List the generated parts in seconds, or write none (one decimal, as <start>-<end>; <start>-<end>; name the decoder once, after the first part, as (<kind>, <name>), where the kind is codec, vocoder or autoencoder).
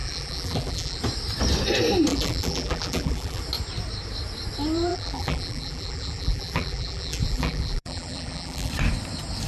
0.0-1.0 (vocoder, BigVGAN v2); 2.1-3.4; 4.9-8.7